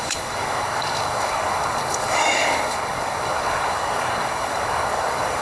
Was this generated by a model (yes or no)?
yes